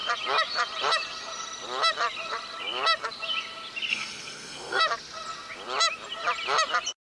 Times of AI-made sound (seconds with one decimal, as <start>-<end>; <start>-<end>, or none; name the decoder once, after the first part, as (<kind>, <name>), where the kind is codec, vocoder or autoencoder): 3.9-4.8 (codec, SNAC)